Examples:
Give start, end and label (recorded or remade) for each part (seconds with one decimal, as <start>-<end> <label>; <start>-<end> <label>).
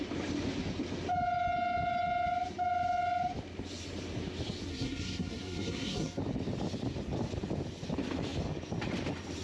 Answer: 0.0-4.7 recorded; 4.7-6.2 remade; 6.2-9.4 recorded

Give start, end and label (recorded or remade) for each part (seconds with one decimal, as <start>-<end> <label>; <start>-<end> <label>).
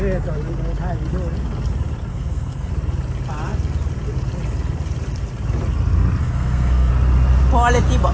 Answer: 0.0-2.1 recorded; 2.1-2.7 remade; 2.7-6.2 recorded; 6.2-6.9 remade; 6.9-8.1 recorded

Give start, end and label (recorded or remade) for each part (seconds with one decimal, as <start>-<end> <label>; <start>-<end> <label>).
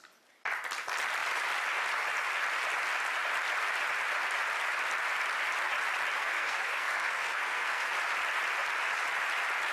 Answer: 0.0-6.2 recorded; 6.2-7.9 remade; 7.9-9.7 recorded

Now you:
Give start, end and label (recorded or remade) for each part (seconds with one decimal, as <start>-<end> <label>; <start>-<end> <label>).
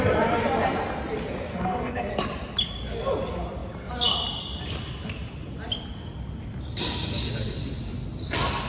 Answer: 0.0-1.5 recorded; 1.5-2.1 remade; 2.1-8.7 recorded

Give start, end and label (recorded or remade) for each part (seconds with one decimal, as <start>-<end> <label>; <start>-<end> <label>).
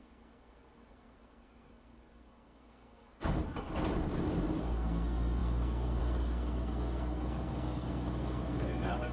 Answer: 0.0-3.4 remade; 3.4-4.6 recorded; 4.6-9.1 remade